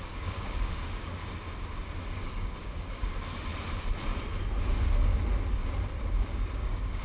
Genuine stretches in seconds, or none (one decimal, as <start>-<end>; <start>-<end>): 1.2-2.1; 3.5-4.6; 5.1-6.2